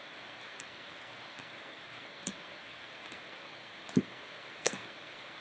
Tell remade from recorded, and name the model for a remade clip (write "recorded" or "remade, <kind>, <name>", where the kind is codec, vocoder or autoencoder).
remade, codec, SNAC